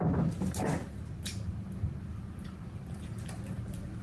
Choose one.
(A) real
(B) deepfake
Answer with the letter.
A